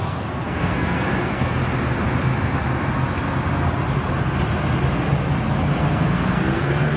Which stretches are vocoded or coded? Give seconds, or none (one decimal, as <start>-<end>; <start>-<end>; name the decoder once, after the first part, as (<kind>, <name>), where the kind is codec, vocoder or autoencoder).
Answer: 0.0-1.6 (codec, SNAC); 5.8-7.0